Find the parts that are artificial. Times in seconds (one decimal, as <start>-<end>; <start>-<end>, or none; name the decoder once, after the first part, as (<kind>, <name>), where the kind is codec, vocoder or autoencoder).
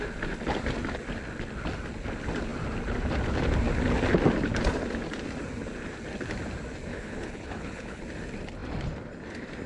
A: 6.9-8.0 (codec, HILCodec)